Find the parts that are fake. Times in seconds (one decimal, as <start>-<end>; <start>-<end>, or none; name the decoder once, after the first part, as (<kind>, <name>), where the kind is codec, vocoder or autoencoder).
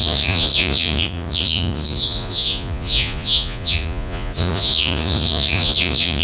0.0-6.2 (vocoder, Vocos)